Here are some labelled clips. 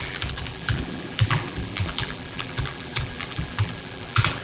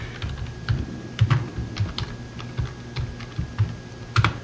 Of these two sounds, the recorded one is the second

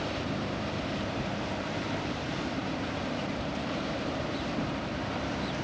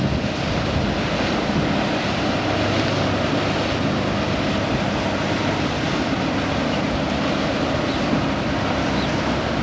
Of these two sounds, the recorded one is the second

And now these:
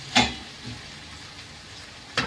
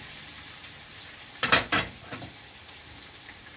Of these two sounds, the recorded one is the first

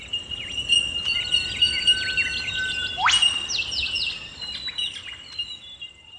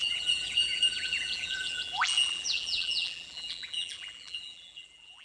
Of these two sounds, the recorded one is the first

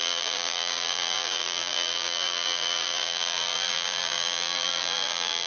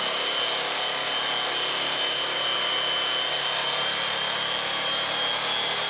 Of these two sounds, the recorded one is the second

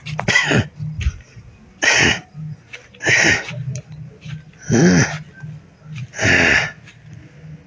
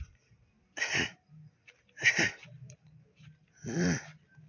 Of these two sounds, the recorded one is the first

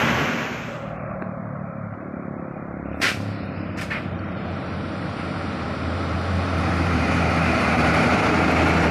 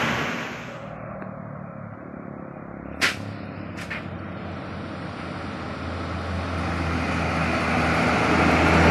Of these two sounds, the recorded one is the second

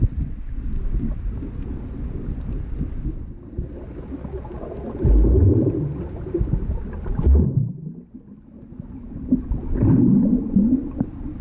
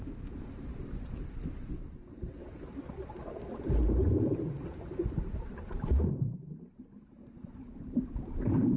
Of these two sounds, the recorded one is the first